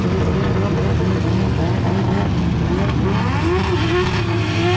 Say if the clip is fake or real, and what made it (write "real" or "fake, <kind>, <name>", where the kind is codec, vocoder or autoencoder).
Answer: real